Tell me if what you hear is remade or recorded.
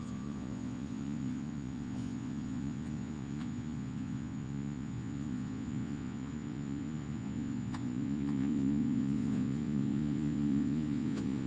remade